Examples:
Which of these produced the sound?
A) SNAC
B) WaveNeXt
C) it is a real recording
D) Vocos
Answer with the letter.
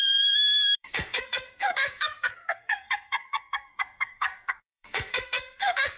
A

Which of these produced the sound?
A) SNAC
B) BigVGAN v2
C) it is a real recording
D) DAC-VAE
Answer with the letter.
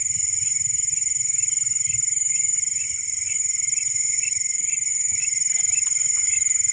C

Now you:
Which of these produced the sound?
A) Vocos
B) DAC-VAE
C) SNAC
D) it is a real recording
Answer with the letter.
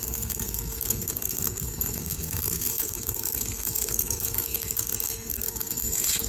C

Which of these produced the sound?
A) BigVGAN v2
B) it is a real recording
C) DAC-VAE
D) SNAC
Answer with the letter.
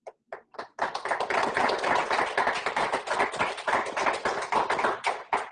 B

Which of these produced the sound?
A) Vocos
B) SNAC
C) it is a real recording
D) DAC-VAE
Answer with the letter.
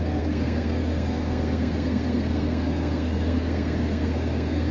B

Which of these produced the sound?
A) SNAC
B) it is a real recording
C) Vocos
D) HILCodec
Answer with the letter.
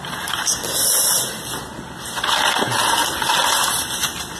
B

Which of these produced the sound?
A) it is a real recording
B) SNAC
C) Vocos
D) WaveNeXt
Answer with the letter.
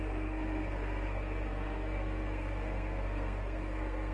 B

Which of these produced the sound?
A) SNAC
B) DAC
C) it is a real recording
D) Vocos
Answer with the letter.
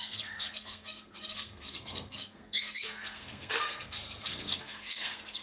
A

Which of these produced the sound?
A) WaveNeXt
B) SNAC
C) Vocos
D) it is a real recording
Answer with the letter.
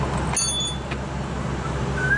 D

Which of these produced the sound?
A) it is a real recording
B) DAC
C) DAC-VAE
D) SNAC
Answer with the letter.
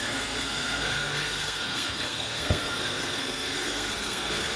D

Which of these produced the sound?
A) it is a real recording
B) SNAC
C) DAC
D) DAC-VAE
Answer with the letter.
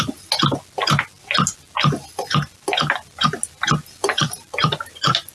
A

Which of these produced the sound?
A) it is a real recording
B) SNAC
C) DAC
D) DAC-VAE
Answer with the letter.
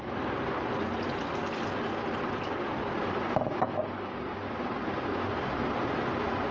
A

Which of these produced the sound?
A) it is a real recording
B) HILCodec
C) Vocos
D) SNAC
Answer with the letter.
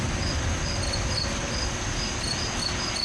A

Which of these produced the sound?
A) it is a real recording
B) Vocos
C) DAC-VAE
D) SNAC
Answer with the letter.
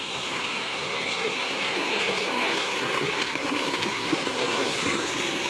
D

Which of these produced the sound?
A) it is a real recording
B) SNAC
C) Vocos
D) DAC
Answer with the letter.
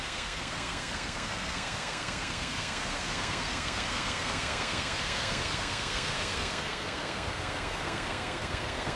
B